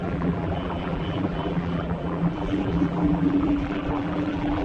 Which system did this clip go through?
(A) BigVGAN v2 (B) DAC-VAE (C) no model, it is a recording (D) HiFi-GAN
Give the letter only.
A